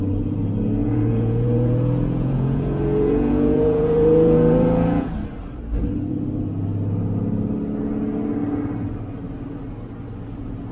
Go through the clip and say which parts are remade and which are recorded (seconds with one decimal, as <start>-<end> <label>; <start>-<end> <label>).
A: 0.0-0.8 recorded; 0.8-5.1 remade; 5.1-10.7 recorded